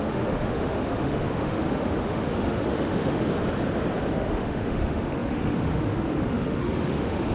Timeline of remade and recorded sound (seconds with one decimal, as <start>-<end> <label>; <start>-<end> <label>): 0.0-3.3 remade; 3.3-4.0 recorded; 4.0-7.3 remade